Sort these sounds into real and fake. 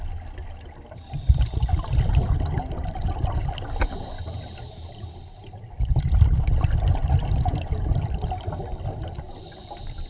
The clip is real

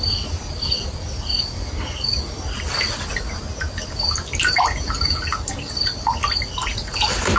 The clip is real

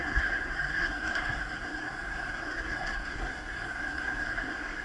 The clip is fake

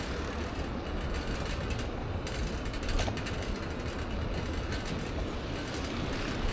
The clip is real